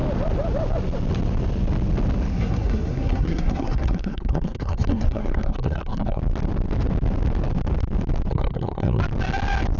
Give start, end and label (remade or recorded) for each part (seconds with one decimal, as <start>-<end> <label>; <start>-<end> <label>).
0.0-2.3 recorded; 2.3-6.2 remade; 6.2-8.3 recorded; 8.3-9.0 remade; 9.0-9.8 recorded

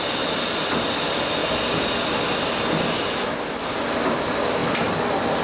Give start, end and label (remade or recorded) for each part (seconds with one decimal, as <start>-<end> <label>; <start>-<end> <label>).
0.0-5.4 recorded